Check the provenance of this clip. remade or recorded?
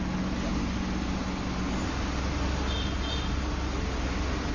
recorded